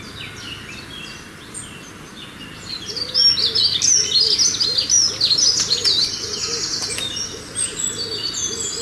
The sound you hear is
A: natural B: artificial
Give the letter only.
A